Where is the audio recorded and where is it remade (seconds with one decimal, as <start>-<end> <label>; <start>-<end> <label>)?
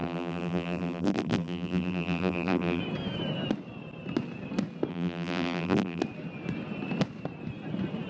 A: 0.0-2.8 remade; 2.8-4.9 recorded; 4.9-6.0 remade; 6.0-8.1 recorded